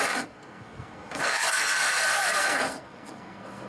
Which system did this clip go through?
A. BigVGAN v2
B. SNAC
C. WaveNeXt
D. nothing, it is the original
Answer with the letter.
B